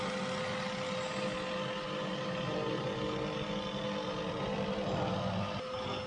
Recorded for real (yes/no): yes